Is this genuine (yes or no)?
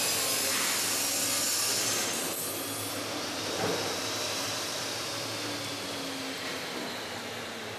yes